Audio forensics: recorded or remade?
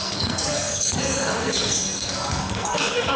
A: remade